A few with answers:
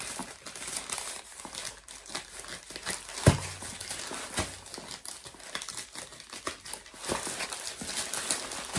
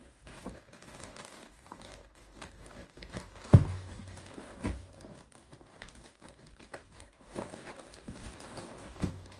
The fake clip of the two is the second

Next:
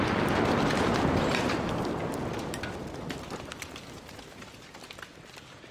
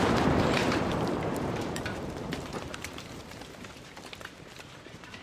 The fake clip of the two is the second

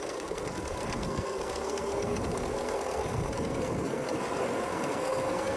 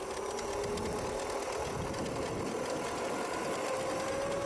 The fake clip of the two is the first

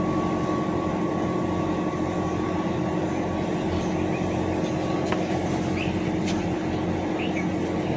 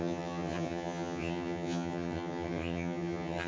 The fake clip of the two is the second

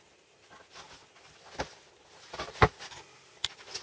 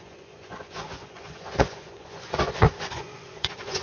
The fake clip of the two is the second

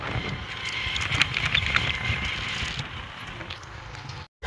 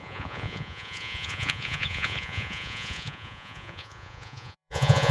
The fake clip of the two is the second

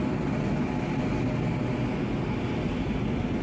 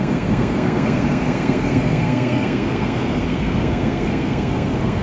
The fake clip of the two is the second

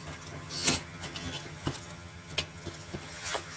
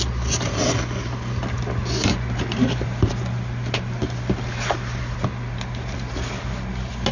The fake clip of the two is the first